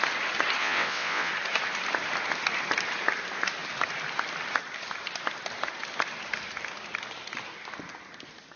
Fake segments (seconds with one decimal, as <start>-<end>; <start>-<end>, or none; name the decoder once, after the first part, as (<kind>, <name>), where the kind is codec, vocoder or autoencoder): 0.6-1.3 (vocoder, WaveNeXt)